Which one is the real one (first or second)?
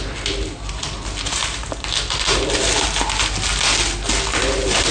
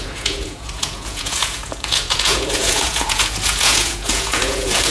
first